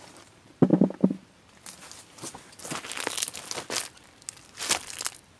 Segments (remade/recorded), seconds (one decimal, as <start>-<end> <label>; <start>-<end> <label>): 0.0-5.4 recorded